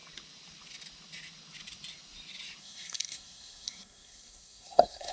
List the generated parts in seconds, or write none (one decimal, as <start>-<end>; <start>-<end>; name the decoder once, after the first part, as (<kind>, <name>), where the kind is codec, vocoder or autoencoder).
2.6-5.1 (codec, SNAC)